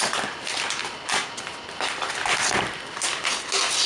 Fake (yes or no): no